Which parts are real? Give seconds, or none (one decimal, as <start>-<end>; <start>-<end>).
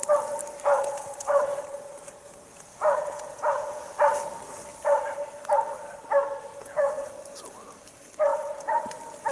0.0-0.7; 3.8-6.5; 7.1-8.3; 8.9-9.3